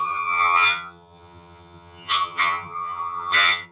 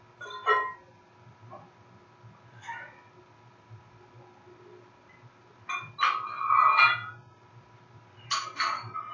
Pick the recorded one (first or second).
second